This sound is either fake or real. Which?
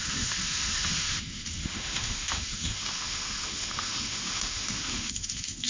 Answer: fake